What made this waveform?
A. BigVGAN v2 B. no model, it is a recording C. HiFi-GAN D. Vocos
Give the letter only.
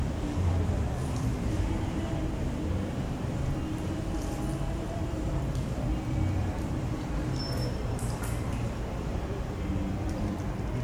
A